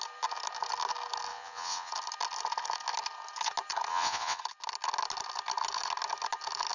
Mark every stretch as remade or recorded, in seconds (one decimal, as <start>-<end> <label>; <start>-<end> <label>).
0.0-1.3 recorded; 1.3-1.9 remade; 1.9-3.9 recorded; 3.9-4.4 remade; 4.4-6.7 recorded